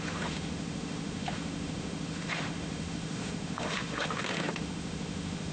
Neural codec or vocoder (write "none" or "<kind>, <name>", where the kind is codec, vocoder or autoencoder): autoencoder, DAC-VAE